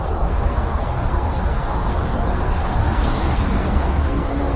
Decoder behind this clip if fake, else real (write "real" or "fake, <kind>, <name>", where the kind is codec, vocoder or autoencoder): fake, codec, SNAC